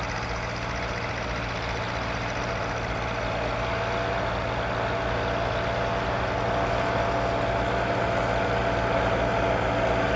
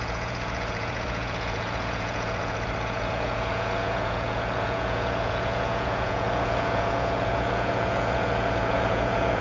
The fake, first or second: second